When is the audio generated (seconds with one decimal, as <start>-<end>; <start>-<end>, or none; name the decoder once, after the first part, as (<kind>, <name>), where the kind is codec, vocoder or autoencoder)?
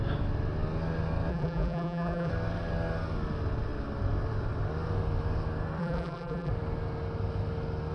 1.3-2.3 (vocoder, BigVGAN v2); 5.8-6.5